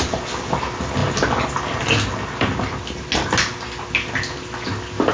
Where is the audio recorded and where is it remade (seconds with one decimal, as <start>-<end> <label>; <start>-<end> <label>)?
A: 0.0-5.1 recorded